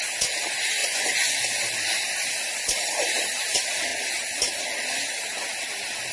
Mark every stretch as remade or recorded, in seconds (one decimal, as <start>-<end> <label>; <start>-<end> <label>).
0.0-0.8 recorded; 0.8-1.4 remade; 1.4-6.1 recorded